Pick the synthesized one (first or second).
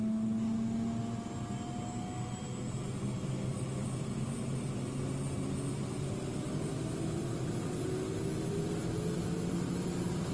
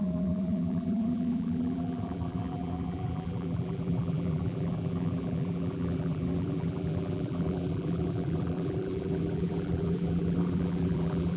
second